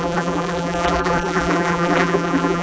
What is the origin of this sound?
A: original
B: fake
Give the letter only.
B